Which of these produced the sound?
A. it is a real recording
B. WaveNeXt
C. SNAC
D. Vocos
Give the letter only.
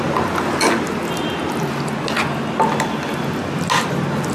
A